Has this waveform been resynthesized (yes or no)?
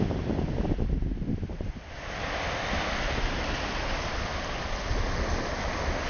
no